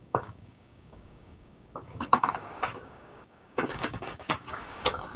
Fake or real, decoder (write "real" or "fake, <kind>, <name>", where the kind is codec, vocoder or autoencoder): fake, codec, DAC